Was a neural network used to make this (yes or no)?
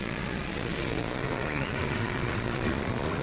yes